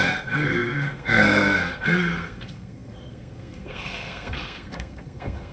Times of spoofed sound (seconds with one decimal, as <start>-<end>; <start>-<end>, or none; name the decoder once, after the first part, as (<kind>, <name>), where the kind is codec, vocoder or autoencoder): 0.0-5.5 (codec, SNAC)